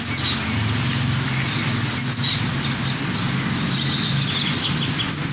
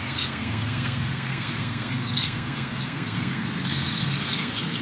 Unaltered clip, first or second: first